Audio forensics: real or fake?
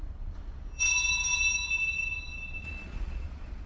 fake